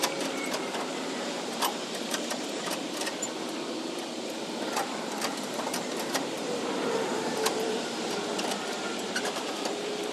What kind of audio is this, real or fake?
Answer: fake